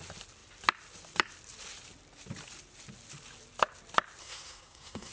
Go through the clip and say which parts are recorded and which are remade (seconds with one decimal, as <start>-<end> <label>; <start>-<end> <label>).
0.0-4.2 recorded; 4.2-5.1 remade